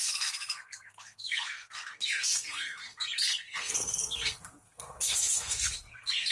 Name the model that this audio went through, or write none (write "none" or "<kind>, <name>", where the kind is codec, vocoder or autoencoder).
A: codec, SNAC